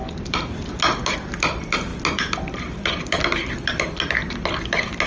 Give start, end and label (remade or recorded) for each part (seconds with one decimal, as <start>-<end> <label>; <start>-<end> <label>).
0.0-5.1 recorded